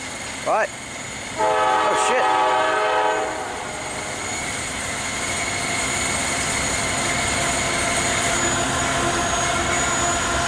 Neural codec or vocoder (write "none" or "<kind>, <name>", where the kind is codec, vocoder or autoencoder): none